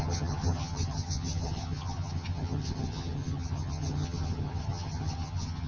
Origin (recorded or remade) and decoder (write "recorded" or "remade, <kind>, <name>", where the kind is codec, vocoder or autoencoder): remade, vocoder, HiFi-GAN